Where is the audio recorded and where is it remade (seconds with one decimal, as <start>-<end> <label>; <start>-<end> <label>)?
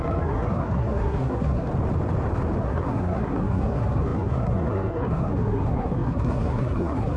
0.0-1.7 remade; 1.7-2.6 recorded; 2.6-7.2 remade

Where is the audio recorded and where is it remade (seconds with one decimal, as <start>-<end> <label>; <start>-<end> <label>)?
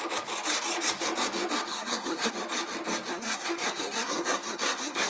0.0-1.7 recorded; 1.7-2.3 remade; 2.3-3.1 recorded; 3.1-5.1 remade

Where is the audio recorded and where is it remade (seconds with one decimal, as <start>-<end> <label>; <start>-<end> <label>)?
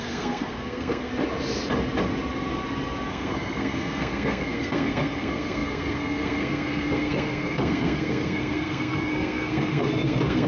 0.0-1.1 remade; 1.1-3.1 recorded; 3.1-10.5 remade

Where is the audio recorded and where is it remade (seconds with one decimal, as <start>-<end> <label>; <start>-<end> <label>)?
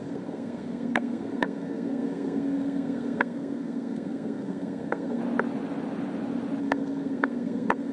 0.0-5.2 remade; 5.2-6.6 recorded; 6.6-7.9 remade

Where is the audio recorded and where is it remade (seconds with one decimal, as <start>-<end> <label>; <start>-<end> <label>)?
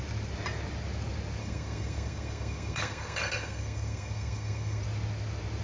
0.0-1.4 recorded; 1.4-4.8 remade; 4.8-5.6 recorded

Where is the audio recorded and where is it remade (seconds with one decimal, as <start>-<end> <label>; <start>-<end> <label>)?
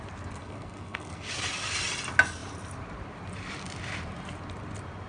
0.0-0.4 recorded; 0.4-1.3 remade; 1.3-5.1 recorded